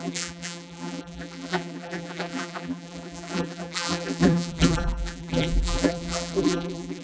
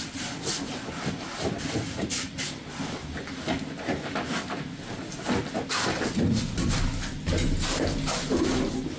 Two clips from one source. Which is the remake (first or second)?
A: first